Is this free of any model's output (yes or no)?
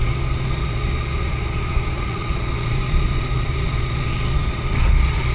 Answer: no